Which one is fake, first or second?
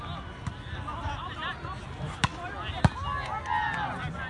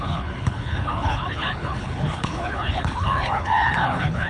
second